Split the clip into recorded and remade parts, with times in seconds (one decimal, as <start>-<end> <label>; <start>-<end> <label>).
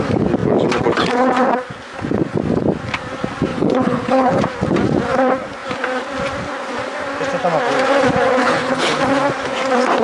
0.0-3.5 recorded; 3.5-4.4 remade; 4.4-8.4 recorded; 8.4-9.0 remade; 9.0-10.0 recorded